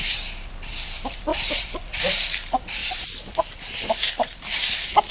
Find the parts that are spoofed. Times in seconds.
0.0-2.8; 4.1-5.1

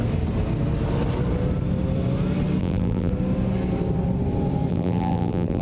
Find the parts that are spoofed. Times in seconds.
2.6-3.1; 4.7-5.6